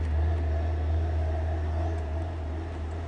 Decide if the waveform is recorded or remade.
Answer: recorded